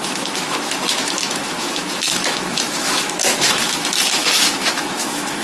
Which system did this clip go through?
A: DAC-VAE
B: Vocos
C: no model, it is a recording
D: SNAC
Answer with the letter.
A